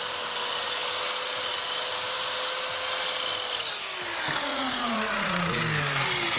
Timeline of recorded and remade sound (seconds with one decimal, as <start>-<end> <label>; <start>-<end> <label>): 0.0-4.5 recorded; 4.5-5.6 remade; 5.6-6.4 recorded